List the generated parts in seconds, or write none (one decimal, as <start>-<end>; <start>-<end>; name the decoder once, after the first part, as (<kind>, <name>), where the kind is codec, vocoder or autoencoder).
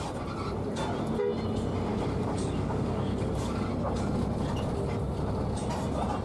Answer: 1.9-3.6 (codec, DAC)